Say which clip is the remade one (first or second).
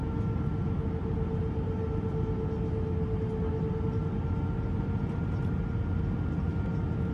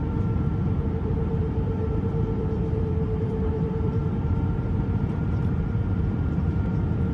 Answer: second